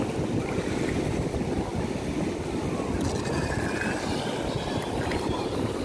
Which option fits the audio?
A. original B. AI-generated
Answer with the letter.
A